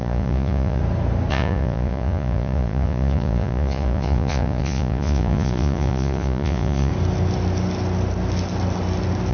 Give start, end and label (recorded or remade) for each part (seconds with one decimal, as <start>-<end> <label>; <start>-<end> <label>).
0.0-0.8 remade; 0.8-1.3 recorded; 1.3-6.9 remade; 6.9-9.3 recorded